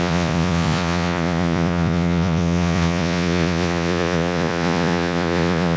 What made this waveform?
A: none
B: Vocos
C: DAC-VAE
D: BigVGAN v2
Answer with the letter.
B